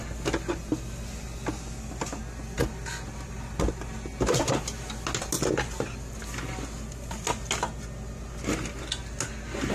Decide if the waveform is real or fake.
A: real